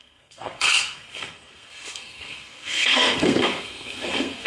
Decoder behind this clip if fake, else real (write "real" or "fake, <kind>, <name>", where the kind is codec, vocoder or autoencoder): fake, codec, SNAC